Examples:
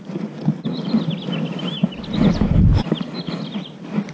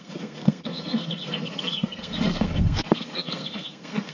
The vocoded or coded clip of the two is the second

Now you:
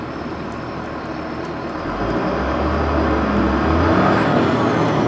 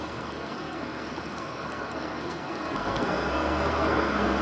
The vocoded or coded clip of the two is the second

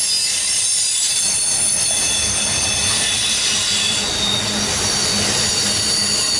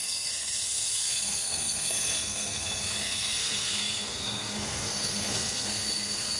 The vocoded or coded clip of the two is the second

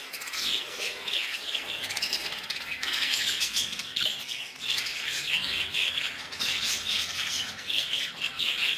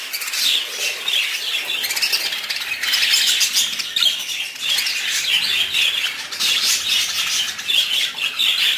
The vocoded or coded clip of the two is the first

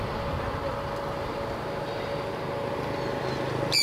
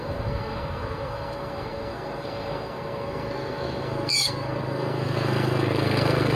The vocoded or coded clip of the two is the second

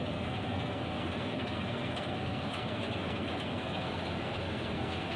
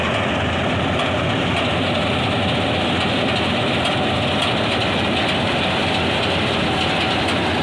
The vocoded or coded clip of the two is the first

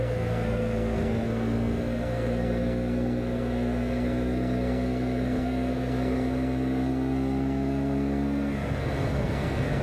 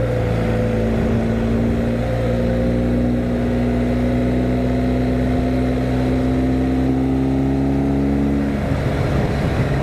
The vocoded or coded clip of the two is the first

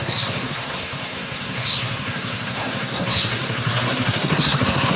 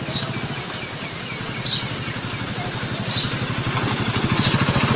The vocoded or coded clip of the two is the first